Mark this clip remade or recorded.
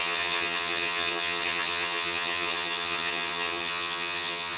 remade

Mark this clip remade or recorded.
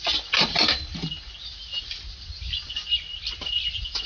recorded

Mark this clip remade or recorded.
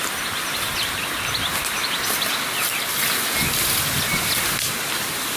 recorded